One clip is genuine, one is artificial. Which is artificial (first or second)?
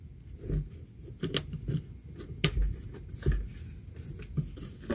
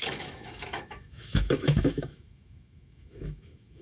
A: second